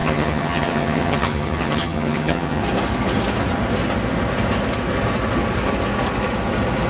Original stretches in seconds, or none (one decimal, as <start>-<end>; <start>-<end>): 2.6-6.9